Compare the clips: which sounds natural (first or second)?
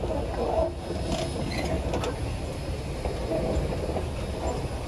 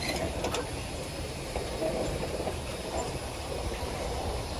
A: first